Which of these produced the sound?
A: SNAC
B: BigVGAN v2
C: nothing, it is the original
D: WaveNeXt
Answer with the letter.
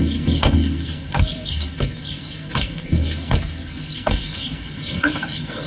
A